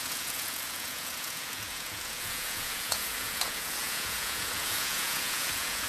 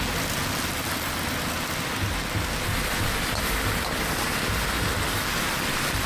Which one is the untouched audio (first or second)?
second